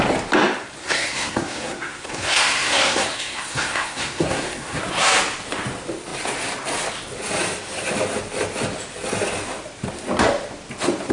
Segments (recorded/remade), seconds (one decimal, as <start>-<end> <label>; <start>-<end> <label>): 0.0-0.8 recorded; 0.8-4.8 remade; 4.8-11.1 recorded